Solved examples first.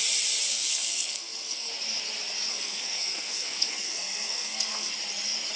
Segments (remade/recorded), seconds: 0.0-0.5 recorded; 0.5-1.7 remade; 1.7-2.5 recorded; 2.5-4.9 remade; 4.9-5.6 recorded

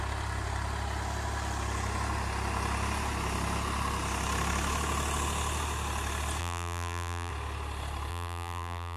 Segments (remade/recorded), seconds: 0.0-6.4 recorded; 6.4-7.3 remade; 7.3-8.1 recorded; 8.1-9.0 remade